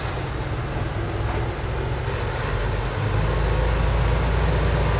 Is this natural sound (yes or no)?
yes